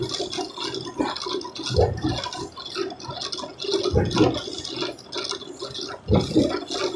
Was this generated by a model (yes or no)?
no